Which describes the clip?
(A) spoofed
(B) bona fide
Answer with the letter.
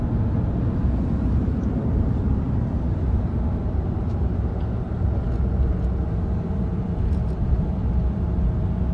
B